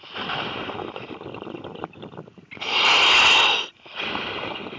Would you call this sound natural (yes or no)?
yes